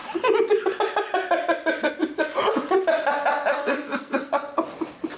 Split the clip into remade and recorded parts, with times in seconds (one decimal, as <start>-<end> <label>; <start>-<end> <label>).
0.0-3.5 recorded; 3.5-4.3 remade; 4.3-5.2 recorded